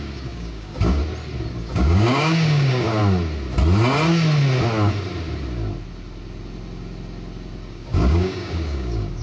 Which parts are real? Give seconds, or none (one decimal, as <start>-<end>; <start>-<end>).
1.0-1.6; 3.0-7.7